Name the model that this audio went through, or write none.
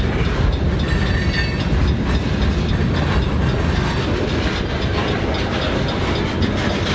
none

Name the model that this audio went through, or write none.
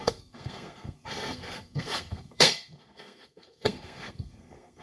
codec, SNAC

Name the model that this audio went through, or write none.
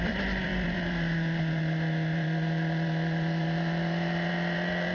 vocoder, BigVGAN v2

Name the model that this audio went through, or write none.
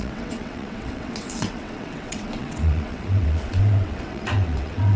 vocoder, WaveNeXt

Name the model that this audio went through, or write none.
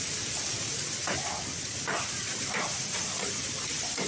none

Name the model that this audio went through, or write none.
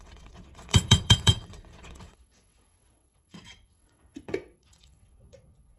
vocoder, WaveNeXt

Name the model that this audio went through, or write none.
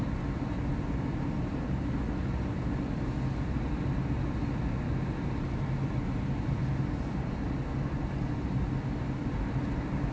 none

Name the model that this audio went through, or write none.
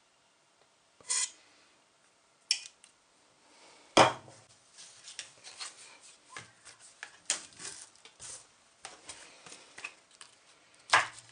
none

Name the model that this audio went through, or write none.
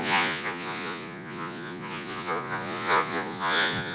vocoder, Vocos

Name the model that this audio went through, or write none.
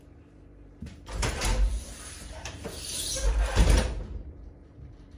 vocoder, BigVGAN v2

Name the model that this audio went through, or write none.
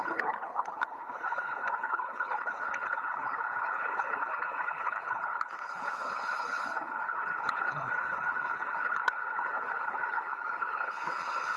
codec, HILCodec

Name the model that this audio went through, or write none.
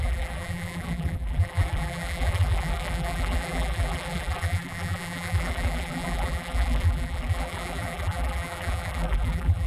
vocoder, BigVGAN v2